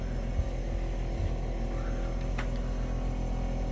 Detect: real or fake real